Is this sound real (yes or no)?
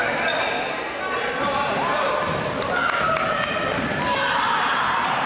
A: yes